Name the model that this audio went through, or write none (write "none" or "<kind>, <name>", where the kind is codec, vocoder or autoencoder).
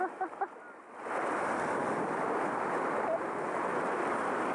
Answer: none